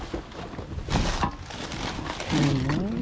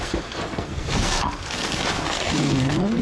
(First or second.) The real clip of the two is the first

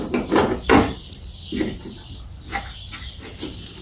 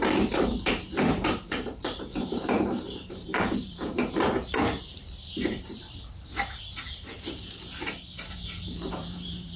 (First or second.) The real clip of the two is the first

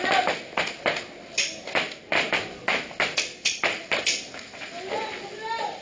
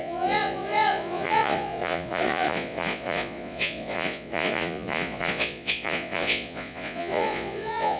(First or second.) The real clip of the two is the first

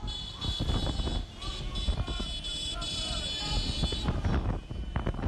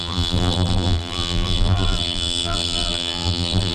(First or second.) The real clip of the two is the first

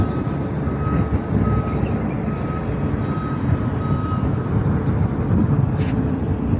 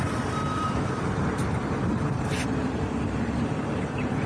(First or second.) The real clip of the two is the first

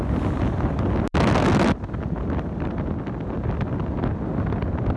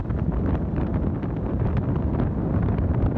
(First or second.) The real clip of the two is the first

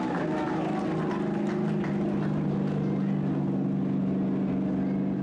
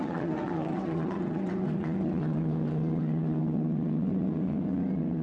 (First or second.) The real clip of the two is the first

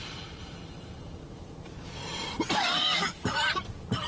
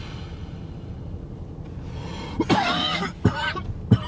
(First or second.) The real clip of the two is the second